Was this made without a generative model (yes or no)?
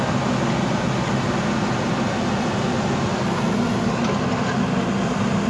yes